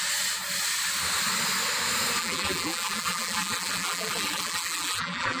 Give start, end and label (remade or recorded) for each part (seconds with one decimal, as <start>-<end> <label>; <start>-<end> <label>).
0.0-2.2 recorded; 2.2-5.4 remade